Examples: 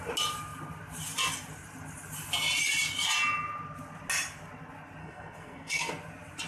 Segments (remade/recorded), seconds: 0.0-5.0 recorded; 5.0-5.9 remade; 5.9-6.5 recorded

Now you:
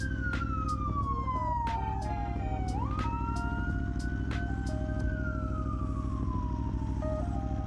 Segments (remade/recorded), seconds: 0.0-7.7 recorded

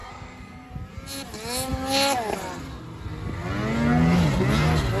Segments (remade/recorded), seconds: 0.0-0.7 remade; 0.7-5.0 recorded